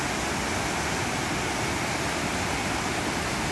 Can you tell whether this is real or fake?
real